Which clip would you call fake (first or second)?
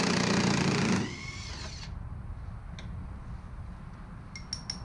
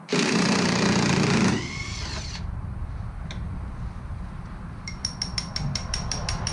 second